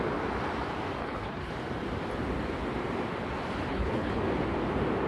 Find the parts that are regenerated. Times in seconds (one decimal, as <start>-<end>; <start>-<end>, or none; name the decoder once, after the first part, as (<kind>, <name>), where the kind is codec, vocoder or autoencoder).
1.0-1.5 (codec, HILCodec); 3.7-4.2